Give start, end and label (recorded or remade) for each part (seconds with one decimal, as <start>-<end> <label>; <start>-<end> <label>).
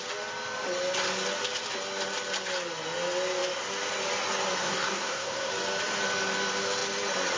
0.0-4.6 recorded; 4.6-5.5 remade; 5.5-7.4 recorded